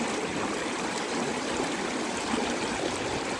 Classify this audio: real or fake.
real